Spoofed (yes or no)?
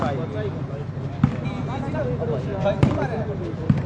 no